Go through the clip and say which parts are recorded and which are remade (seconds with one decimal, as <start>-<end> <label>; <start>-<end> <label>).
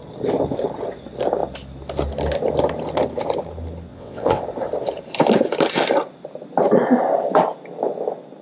0.0-3.9 recorded; 3.9-4.4 remade; 4.4-8.4 recorded